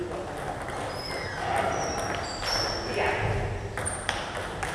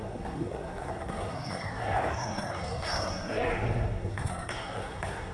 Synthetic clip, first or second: second